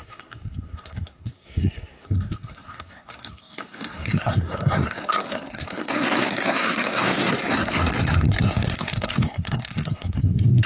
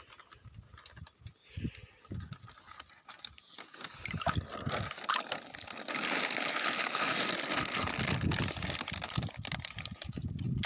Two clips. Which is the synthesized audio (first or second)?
first